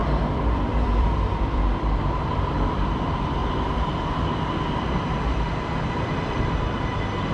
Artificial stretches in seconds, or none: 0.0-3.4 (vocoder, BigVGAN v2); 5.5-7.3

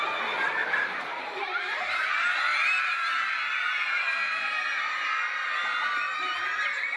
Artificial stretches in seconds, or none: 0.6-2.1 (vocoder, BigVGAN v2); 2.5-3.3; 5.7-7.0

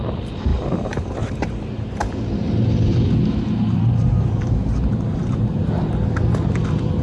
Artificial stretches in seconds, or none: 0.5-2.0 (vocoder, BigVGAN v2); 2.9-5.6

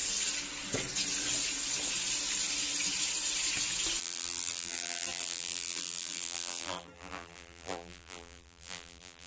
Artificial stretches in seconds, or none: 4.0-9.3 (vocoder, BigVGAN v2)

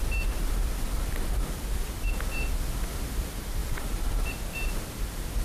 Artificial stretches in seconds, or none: 0.0-5.4 (vocoder, BigVGAN v2)

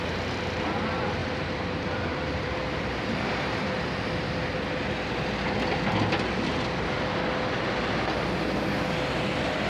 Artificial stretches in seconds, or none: 1.2-3.8 (vocoder, BigVGAN v2)

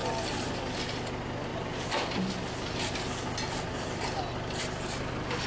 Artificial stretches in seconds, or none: 0.0-0.8 (vocoder, BigVGAN v2); 1.5-4.2